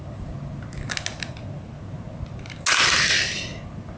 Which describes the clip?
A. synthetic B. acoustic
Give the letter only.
B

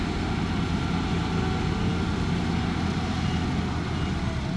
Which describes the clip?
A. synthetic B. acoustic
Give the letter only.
B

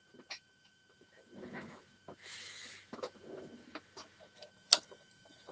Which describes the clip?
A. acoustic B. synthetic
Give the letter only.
B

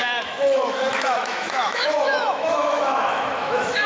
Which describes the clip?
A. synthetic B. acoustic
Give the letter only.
A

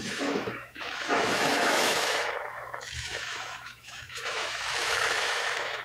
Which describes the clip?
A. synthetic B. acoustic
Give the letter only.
A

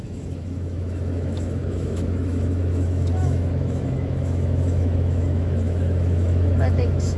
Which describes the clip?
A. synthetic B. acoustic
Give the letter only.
A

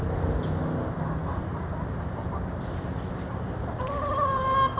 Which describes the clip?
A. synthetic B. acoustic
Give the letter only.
B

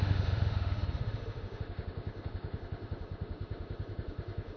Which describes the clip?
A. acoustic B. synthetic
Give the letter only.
B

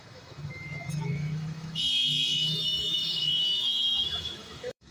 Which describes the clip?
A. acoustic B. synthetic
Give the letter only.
B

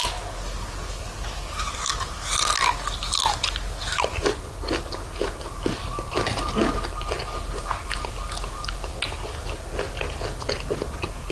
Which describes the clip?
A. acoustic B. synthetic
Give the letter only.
A